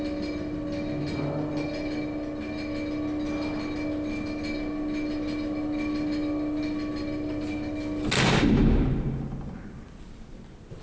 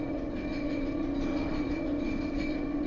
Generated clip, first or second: second